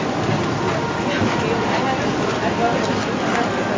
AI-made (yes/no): no